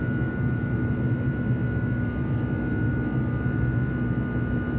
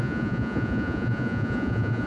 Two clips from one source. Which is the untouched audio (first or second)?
first